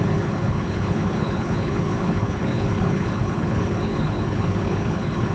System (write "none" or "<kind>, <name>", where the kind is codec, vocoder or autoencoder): codec, HILCodec